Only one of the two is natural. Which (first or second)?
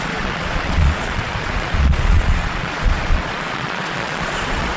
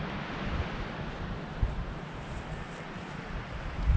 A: second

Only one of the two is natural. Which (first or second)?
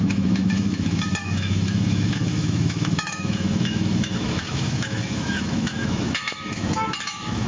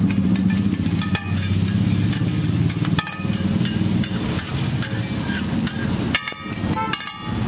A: second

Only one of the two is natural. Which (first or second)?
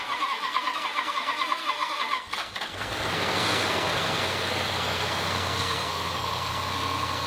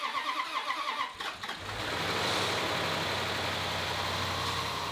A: second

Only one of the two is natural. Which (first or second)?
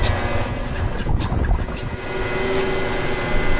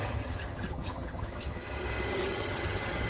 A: first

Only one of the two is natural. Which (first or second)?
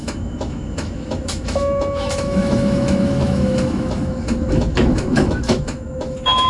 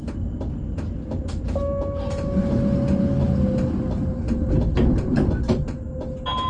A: second